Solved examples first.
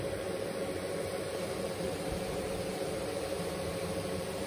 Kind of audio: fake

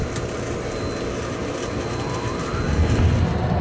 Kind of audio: real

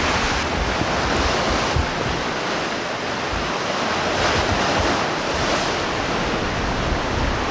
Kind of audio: real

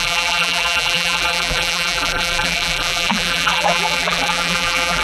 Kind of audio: fake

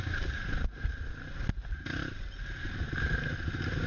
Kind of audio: real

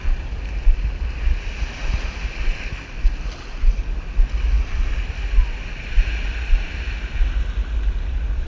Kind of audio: real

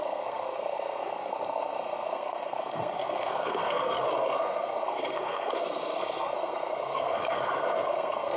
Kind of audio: fake